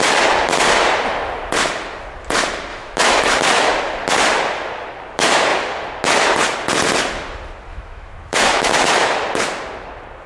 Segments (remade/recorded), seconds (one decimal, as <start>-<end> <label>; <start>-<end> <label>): 0.0-2.7 recorded; 2.7-3.4 remade; 3.4-7.7 recorded; 7.7-8.7 remade; 8.7-10.3 recorded

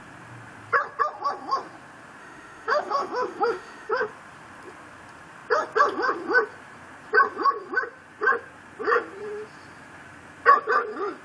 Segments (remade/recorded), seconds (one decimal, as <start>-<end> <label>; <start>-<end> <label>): 0.0-2.2 recorded; 2.2-4.1 remade; 4.1-11.2 recorded